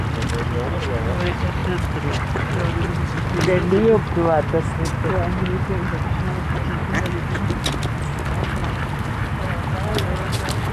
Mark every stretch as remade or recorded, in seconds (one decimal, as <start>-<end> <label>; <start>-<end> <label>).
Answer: 0.0-10.7 recorded